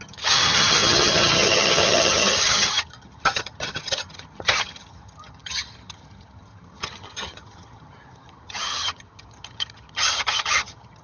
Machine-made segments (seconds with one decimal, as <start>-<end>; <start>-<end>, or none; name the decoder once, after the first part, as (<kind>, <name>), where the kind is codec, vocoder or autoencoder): 0.0-11.0 (vocoder, HiFi-GAN)